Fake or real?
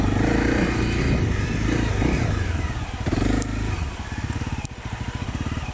real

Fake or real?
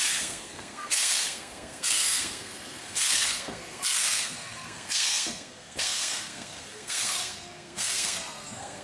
fake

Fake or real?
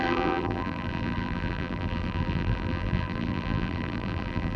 fake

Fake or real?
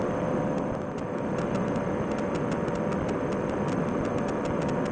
real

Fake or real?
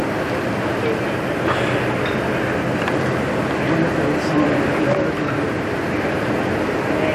real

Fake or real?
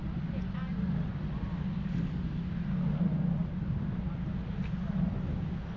real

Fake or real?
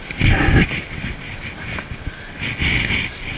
real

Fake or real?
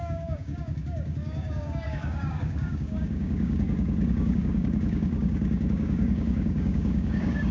fake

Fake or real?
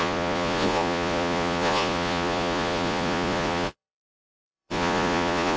fake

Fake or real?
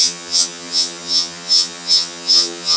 fake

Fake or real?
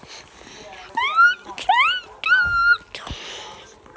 real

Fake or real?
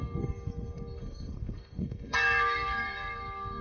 fake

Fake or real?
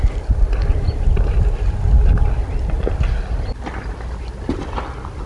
real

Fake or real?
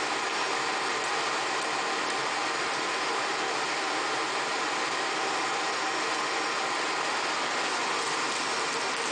real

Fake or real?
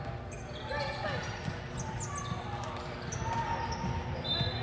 real